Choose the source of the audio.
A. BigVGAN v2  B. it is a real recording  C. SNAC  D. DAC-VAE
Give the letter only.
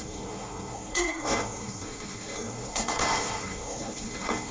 C